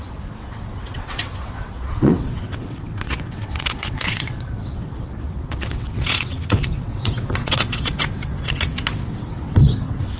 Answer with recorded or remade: remade